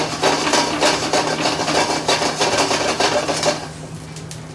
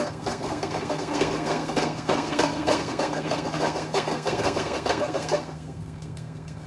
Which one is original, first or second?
first